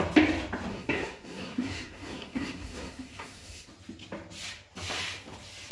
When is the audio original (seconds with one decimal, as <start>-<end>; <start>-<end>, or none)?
0.0-0.7; 3.7-5.7